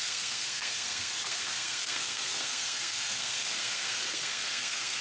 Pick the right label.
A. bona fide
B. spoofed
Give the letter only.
B